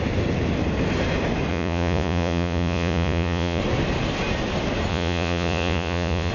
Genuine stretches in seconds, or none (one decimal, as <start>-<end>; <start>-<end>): 0.0-1.5; 3.6-4.9